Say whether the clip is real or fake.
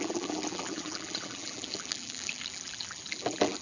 fake